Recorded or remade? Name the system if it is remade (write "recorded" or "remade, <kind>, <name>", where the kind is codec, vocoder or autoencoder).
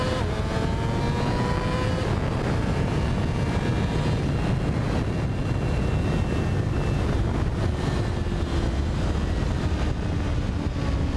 recorded